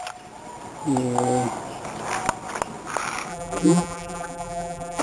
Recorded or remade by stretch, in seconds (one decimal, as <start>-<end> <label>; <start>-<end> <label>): 0.0-3.3 recorded; 3.3-5.0 remade